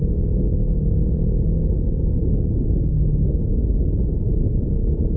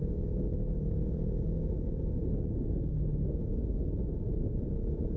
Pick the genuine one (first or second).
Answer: first